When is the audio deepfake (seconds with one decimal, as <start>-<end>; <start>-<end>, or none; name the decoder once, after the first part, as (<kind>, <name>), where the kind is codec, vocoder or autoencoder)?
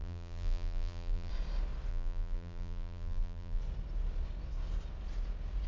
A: 0.0-1.3 (vocoder, BigVGAN v2); 1.9-3.6